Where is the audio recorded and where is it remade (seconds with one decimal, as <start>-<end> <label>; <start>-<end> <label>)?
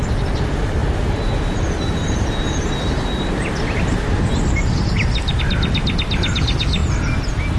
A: 0.0-0.8 recorded; 0.8-5.4 remade; 5.4-7.6 recorded